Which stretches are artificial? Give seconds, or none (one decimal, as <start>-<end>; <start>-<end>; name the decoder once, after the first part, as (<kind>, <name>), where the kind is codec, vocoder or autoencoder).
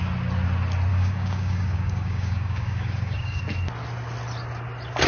0.9-3.4 (codec, DAC)